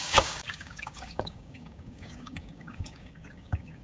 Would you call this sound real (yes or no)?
no